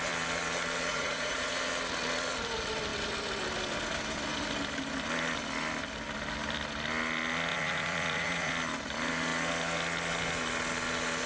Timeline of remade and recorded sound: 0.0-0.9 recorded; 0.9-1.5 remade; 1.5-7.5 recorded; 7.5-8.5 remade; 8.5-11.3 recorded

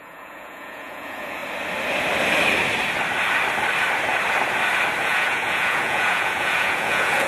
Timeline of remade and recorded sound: 0.0-1.4 remade; 1.4-5.0 recorded; 5.0-7.3 remade

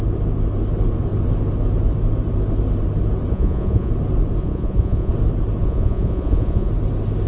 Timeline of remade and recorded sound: 0.0-3.3 recorded; 3.3-3.9 remade; 3.9-4.4 recorded; 4.4-5.1 remade; 5.1-5.6 recorded; 5.6-6.7 remade; 6.7-7.3 recorded

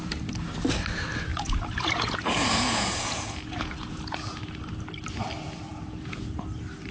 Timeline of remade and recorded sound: 0.0-1.3 recorded; 1.3-4.6 remade; 4.6-5.7 recorded; 5.7-6.4 remade; 6.4-6.9 recorded

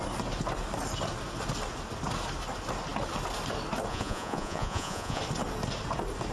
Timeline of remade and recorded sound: 0.0-3.9 recorded; 3.9-5.2 remade; 5.2-6.3 recorded